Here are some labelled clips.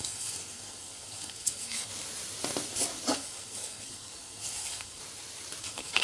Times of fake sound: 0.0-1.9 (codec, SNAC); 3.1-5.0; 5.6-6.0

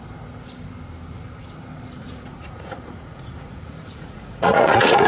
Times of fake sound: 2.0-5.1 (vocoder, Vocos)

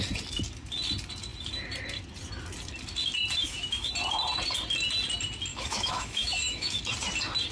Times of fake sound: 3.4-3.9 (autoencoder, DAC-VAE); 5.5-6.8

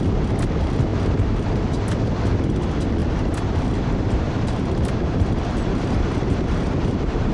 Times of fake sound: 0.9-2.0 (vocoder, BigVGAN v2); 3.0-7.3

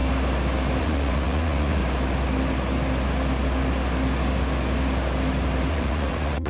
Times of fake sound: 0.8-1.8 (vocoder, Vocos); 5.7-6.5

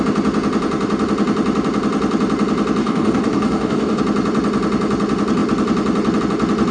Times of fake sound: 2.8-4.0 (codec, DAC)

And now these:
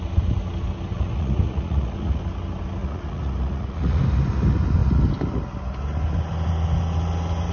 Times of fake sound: 0.9-2.2 (vocoder, Vocos); 2.8-4.0

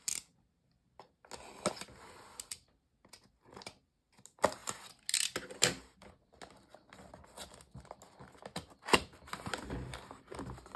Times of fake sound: none